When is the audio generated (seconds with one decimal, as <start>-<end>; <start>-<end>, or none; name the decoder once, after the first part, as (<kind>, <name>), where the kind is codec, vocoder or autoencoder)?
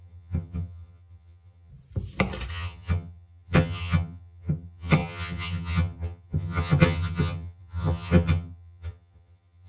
0.0-1.7 (vocoder, HiFi-GAN); 2.5-9.7